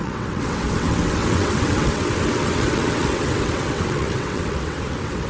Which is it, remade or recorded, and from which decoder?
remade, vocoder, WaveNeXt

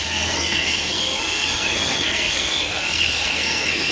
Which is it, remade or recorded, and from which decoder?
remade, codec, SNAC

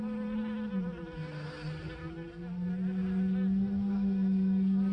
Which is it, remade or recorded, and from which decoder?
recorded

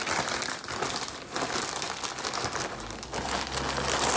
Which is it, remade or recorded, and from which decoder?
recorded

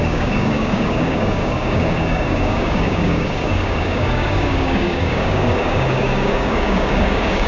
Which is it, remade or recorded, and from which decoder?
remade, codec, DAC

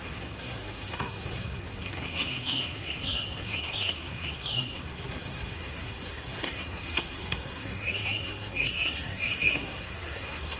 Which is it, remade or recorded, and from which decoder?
remade, codec, SNAC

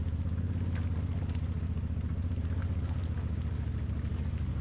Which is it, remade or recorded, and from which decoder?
recorded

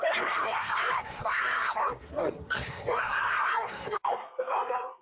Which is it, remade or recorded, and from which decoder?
remade, codec, SNAC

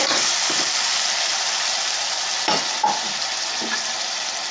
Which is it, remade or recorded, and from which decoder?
recorded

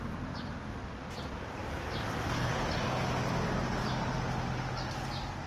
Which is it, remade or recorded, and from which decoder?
recorded